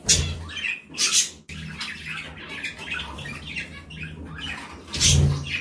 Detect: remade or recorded recorded